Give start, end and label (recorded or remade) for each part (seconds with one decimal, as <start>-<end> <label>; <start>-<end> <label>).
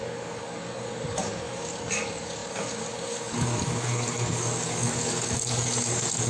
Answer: 0.0-6.3 remade